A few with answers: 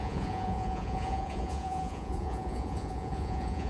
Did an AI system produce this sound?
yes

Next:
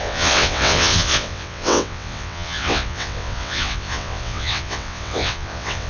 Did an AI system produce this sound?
yes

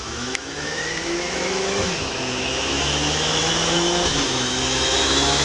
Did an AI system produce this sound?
yes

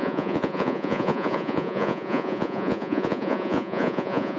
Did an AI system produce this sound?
yes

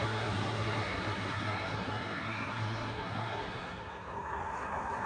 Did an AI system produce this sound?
yes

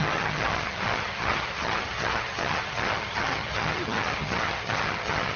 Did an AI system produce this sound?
yes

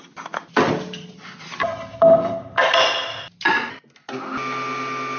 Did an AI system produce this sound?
no